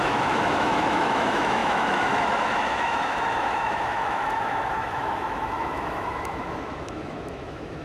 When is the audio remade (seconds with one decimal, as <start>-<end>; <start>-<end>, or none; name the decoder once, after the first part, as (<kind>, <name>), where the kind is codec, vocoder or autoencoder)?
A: 0.0-7.8 (autoencoder, DAC-VAE)